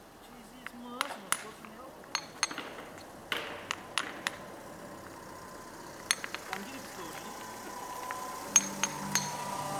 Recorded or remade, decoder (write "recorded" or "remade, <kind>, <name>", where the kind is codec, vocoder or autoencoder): recorded